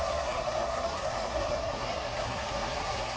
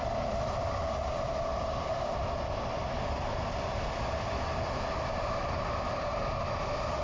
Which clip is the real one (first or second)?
second